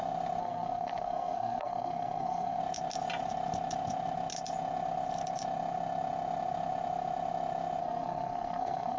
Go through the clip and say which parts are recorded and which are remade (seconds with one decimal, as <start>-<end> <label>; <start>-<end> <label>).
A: 0.0-0.4 recorded; 0.4-2.6 remade; 2.6-7.8 recorded; 7.8-9.0 remade